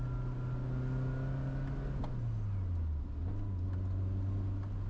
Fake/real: real